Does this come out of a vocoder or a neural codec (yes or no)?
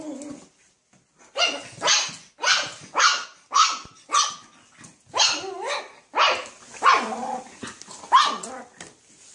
no